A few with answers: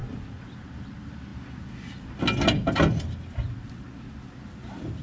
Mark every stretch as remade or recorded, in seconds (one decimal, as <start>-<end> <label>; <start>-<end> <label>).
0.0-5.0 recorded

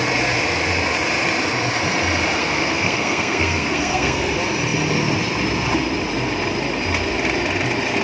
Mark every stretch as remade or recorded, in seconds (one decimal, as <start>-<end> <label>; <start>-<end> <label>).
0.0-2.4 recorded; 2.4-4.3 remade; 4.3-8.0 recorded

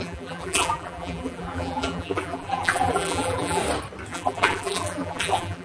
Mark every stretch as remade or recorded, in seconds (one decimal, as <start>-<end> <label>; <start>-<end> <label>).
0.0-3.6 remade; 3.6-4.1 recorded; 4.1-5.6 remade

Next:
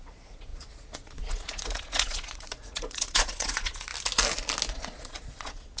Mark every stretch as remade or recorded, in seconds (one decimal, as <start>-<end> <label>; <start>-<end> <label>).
0.0-3.9 remade; 3.9-4.7 recorded; 4.7-5.8 remade